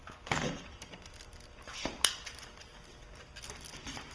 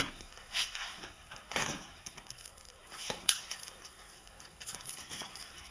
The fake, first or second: second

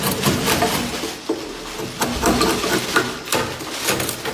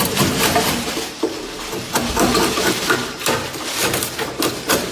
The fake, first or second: second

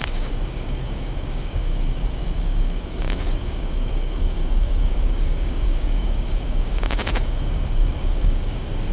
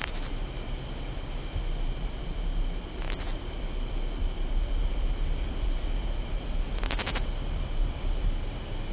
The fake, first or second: first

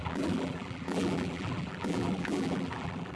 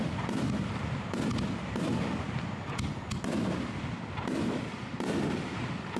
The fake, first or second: first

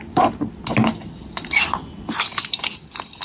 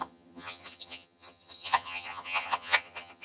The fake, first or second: second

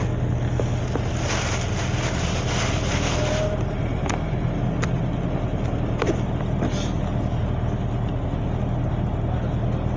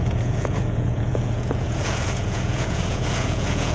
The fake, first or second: second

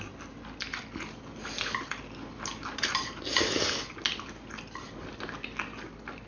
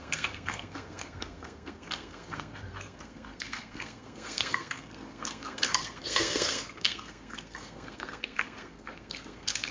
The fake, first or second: second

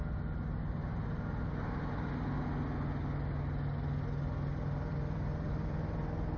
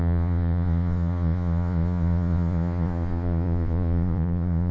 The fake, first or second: second